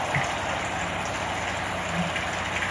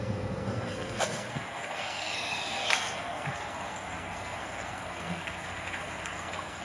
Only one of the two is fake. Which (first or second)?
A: second